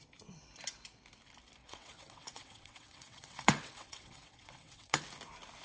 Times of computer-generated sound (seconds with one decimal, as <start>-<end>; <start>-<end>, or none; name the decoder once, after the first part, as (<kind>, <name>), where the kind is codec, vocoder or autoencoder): 1.6-5.0 (vocoder, WaveNeXt)